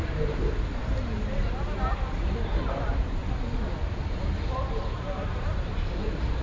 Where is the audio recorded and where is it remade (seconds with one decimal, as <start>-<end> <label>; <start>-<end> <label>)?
0.0-3.2 remade; 3.2-4.6 recorded; 4.6-6.4 remade